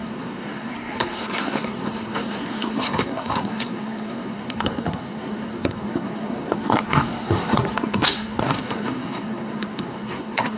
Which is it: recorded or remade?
remade